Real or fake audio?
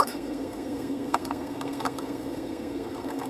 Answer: fake